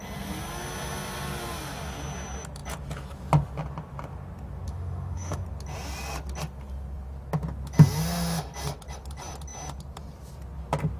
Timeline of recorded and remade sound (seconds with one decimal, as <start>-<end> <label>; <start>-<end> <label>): 0.0-4.7 recorded; 4.7-5.4 remade; 5.4-11.0 recorded